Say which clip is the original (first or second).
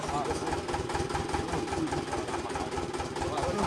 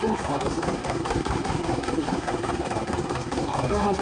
first